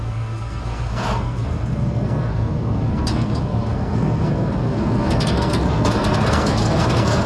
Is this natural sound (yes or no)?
no